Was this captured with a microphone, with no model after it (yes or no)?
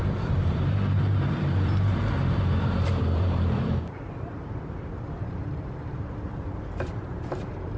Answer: no